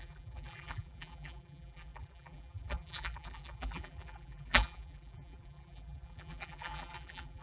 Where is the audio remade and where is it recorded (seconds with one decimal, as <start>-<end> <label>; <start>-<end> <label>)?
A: 0.0-7.4 remade

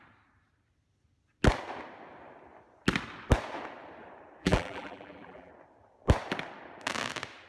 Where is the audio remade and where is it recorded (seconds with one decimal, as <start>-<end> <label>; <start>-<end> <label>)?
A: 0.0-4.4 recorded; 4.4-5.5 remade; 5.5-7.5 recorded

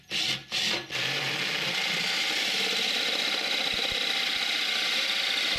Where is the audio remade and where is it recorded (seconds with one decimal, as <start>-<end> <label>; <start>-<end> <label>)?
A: 0.0-5.6 recorded

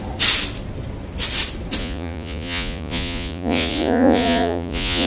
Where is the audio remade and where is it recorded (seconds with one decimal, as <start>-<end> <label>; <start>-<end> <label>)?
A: 0.0-1.8 recorded; 1.8-5.1 remade

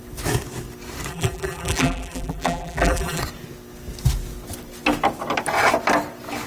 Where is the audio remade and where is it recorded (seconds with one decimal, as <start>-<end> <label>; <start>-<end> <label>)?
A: 0.0-1.1 recorded; 1.1-3.2 remade; 3.2-6.5 recorded

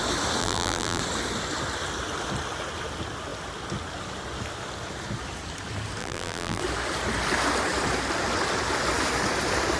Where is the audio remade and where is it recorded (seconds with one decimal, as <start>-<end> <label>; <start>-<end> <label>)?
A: 0.0-0.4 recorded; 0.4-1.0 remade; 1.0-6.0 recorded; 6.0-6.6 remade; 6.6-9.8 recorded

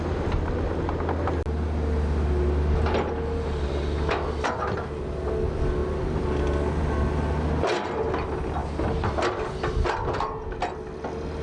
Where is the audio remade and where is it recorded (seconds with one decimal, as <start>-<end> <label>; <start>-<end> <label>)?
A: 0.0-11.4 recorded